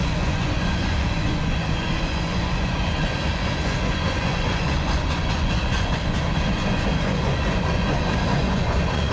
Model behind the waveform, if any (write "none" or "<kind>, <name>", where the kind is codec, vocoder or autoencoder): vocoder, Vocos